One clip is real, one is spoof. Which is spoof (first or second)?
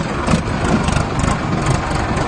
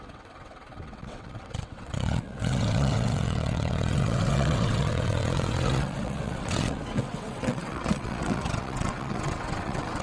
second